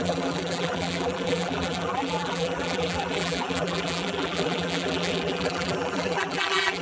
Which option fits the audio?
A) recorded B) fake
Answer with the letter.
B